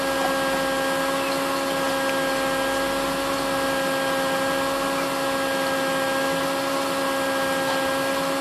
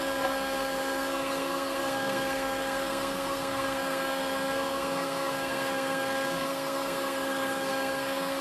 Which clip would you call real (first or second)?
first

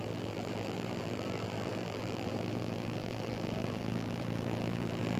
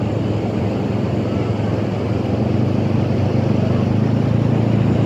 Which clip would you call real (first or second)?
second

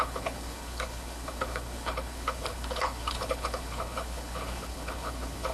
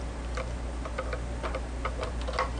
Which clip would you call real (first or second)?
second